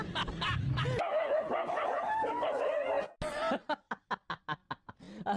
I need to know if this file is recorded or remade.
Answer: recorded